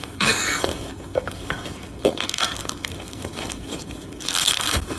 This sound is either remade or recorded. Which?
remade